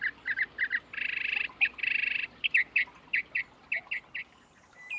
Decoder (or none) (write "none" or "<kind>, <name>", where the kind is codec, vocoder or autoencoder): none